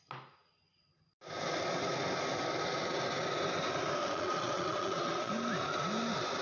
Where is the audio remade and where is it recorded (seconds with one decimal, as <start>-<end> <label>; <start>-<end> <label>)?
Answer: 0.0-4.0 recorded; 4.0-5.3 remade; 5.3-6.4 recorded